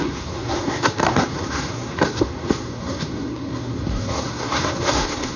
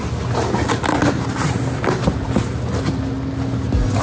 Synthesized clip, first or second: first